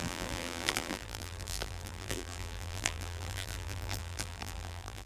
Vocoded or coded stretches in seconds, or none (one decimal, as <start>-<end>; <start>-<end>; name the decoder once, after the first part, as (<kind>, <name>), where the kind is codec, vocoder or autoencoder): 0.0-5.1 (vocoder, BigVGAN v2)